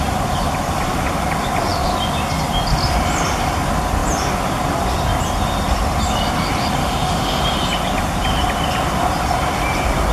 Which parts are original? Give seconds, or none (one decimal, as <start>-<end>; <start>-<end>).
0.0-6.8; 7.4-10.1

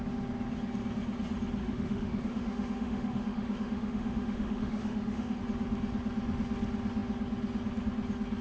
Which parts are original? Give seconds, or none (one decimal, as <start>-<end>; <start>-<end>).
0.0-1.6; 5.4-8.4

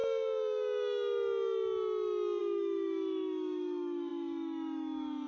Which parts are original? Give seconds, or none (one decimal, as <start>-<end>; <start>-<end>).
0.0-2.4